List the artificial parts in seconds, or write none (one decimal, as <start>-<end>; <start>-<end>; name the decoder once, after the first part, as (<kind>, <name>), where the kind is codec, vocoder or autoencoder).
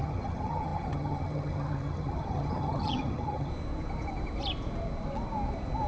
0.0-3.5 (vocoder, HiFi-GAN)